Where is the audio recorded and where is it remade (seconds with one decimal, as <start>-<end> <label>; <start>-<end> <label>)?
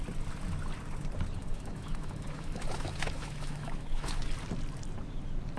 0.0-1.4 recorded; 1.4-4.2 remade; 4.2-5.6 recorded